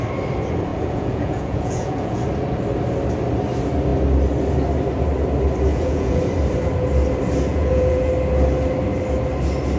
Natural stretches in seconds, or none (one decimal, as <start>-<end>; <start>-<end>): 0.0-0.7; 2.2-5.7; 6.2-7.5; 8.1-9.8